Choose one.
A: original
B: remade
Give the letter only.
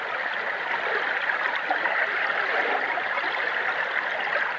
A